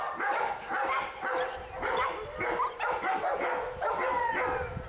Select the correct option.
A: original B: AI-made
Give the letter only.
A